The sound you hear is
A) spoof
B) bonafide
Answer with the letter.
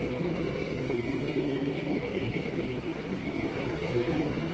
A